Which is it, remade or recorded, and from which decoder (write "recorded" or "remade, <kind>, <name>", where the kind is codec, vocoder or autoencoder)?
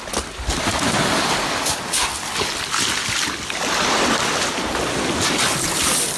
recorded